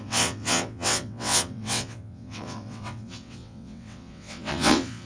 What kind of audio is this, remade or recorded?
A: remade